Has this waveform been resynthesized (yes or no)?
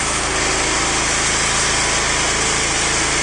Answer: no